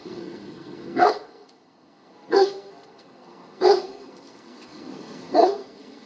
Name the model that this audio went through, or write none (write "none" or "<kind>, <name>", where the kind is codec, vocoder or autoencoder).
codec, SNAC